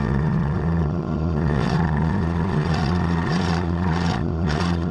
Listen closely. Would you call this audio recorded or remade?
remade